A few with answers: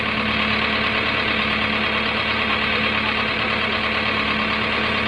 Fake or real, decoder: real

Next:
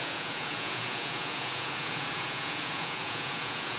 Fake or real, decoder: fake, vocoder, Vocos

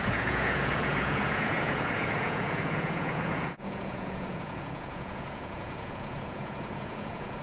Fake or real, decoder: fake, vocoder, Vocos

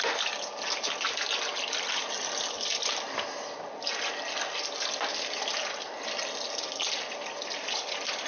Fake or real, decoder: real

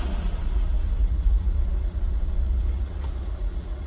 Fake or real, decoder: fake, vocoder, Vocos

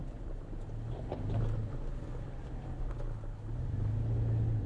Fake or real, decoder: real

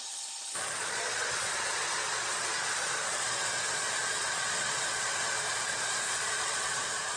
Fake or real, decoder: fake, vocoder, Vocos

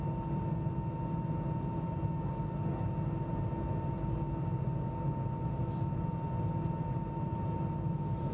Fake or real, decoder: real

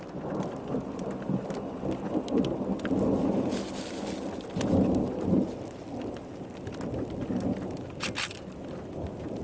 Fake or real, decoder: real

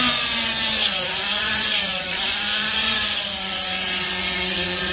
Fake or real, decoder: fake, vocoder, Vocos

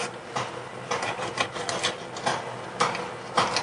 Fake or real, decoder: real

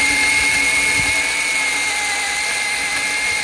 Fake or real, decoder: real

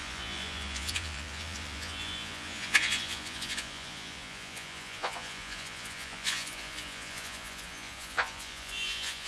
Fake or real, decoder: fake, vocoder, Vocos